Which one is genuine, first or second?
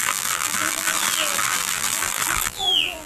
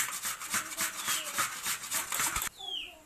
second